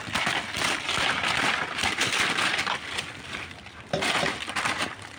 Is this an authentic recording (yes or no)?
yes